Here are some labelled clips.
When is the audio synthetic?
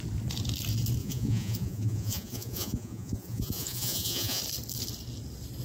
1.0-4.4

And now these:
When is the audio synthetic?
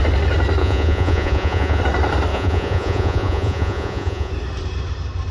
0.6-1.8; 2.3-4.3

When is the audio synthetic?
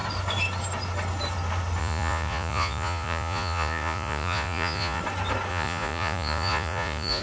1.8-5.0; 5.5-7.2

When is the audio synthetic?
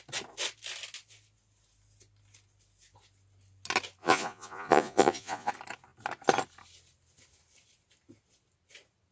4.0-5.5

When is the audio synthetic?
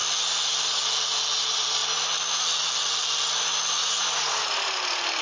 3.8-4.4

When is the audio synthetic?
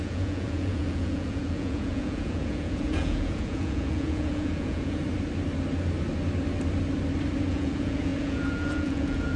0.0-5.0; 7.5-9.4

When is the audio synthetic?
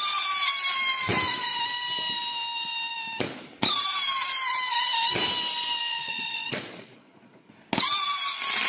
5.9-7.5